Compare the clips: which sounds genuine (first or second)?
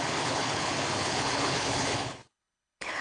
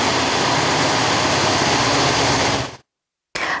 second